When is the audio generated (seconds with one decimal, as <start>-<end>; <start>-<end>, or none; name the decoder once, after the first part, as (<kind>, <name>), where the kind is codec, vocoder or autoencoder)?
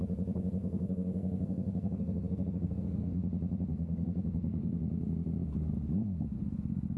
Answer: 0.6-3.2 (codec, SNAC); 3.7-4.8